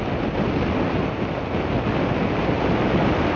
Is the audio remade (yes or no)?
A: no